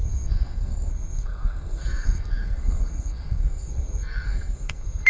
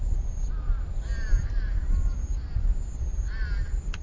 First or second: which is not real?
first